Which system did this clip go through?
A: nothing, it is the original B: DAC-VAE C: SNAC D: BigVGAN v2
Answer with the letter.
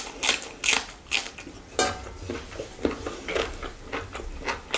A